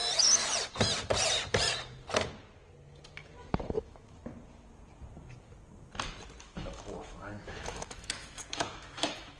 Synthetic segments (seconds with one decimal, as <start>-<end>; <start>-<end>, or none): 3.6-4.2; 6.4-9.4